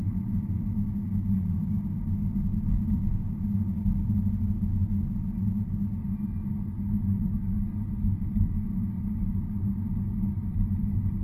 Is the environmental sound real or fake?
real